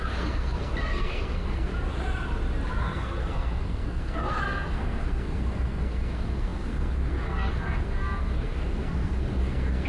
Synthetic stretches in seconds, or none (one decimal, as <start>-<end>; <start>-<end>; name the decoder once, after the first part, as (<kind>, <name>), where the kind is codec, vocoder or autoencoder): 0.0-1.7 (codec, SNAC); 2.8-9.9